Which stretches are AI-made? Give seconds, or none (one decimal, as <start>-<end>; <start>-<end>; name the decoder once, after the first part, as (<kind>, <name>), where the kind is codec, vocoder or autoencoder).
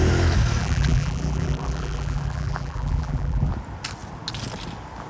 0.6-3.5 (vocoder, BigVGAN v2)